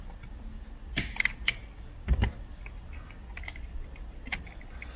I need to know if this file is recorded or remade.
recorded